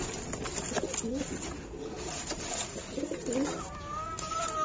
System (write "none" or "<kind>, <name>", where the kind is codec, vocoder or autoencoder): none